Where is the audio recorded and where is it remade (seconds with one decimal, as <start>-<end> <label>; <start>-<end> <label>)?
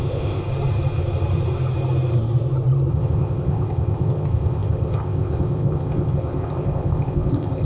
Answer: 0.0-0.4 remade; 0.4-2.9 recorded; 2.9-7.7 remade